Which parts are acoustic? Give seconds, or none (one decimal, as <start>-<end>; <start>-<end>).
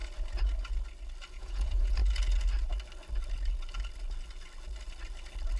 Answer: 0.0-1.3; 2.0-5.6